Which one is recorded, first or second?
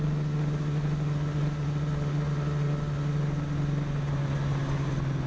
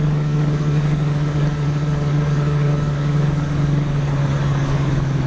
first